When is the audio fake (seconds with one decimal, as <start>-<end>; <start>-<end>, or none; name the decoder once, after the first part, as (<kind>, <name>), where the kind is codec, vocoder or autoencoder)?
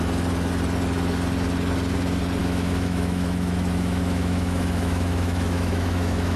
2.4-6.4 (autoencoder, DAC-VAE)